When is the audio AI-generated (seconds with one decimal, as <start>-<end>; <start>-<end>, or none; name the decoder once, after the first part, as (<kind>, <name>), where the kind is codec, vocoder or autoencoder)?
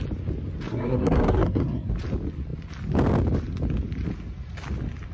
0.7-1.9 (codec, SNAC)